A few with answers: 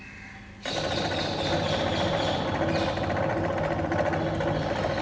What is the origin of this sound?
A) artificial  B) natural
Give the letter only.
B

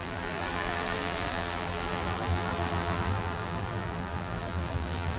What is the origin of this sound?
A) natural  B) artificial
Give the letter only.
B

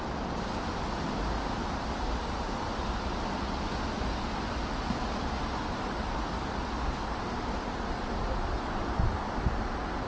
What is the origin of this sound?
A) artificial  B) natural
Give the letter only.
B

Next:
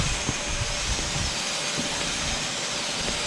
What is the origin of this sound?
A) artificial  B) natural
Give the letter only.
B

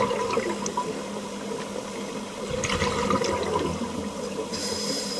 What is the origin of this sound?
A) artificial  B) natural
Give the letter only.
B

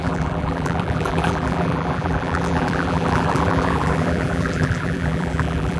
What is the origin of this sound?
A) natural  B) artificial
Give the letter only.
B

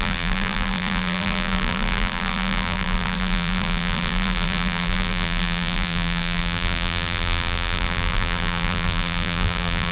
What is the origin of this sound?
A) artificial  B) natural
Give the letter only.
A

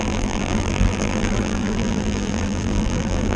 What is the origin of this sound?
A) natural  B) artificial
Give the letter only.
B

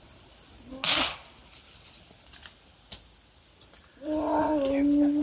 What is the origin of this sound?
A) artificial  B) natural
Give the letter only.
B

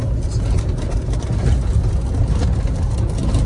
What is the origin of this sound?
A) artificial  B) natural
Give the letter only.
B